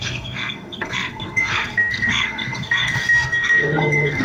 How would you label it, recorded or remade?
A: remade